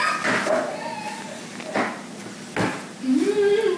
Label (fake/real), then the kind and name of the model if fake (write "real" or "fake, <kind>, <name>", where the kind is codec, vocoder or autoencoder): real